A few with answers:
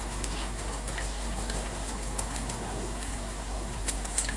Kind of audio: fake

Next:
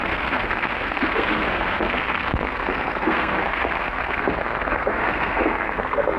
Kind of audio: fake